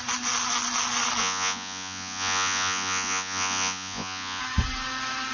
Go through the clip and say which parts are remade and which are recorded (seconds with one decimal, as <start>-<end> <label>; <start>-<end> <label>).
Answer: 0.0-1.2 recorded; 1.2-4.4 remade; 4.4-5.3 recorded